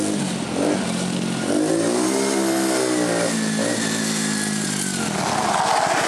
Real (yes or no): yes